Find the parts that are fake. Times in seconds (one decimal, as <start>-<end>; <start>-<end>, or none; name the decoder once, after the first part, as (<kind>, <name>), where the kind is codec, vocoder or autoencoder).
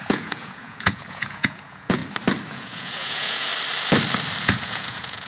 0.0-2.0 (vocoder, Vocos); 2.5-3.5; 4.4-5.3